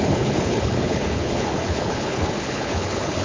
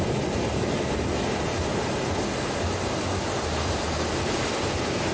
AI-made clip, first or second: first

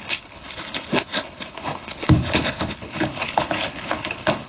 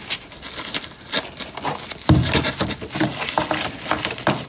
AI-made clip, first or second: first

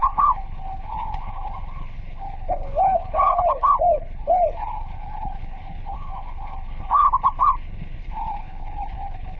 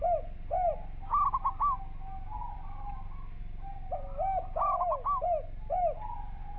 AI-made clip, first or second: first